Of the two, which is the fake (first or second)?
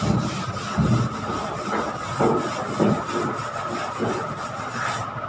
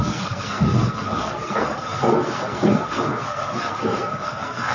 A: second